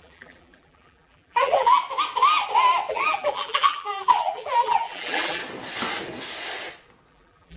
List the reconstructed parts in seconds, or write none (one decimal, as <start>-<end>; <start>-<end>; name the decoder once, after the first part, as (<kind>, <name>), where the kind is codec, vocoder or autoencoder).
0.0-1.8 (vocoder, BigVGAN v2); 2.9-5.4; 7.1-7.6